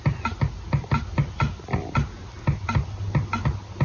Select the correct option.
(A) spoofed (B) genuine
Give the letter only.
B